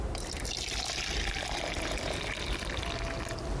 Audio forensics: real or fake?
real